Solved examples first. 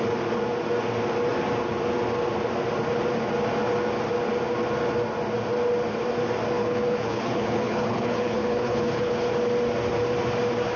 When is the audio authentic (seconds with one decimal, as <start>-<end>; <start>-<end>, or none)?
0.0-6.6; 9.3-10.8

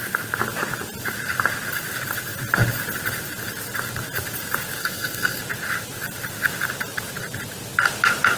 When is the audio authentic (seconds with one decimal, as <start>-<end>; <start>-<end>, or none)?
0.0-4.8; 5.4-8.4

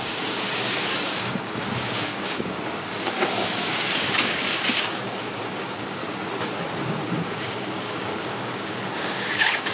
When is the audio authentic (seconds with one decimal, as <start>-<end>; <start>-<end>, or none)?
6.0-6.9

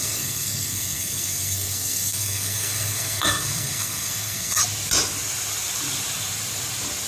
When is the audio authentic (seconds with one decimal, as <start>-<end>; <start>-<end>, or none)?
4.6-7.1

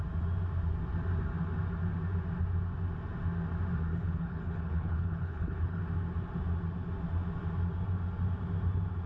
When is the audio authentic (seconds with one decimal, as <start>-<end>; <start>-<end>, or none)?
0.0-3.9; 5.8-9.1

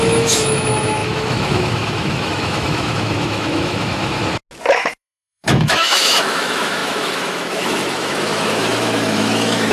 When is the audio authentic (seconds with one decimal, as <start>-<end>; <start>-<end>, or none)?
4.2-4.7

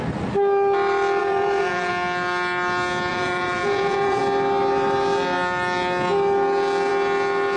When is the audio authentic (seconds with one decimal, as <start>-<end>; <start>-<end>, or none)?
0.0-1.2; 1.9-3.1; 4.2-7.6